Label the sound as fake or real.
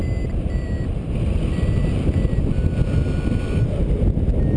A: real